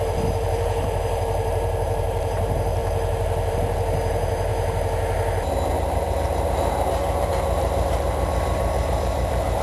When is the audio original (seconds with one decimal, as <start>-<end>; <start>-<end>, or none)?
2.8-3.5; 4.5-5.7